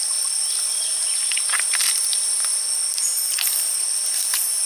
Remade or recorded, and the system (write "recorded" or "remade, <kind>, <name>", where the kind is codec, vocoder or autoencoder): recorded